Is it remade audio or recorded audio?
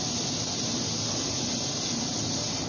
recorded